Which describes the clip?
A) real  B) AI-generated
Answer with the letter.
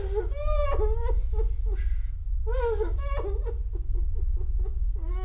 A